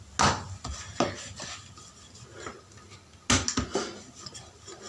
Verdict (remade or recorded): recorded